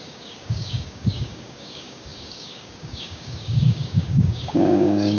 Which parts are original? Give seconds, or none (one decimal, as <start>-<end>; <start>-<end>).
none